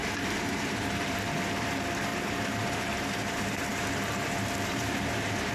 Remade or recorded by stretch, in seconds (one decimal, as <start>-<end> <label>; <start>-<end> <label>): 0.0-1.2 remade; 1.2-2.1 recorded; 2.1-5.5 remade